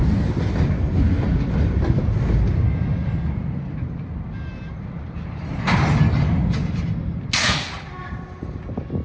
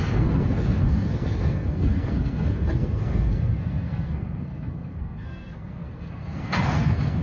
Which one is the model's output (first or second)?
second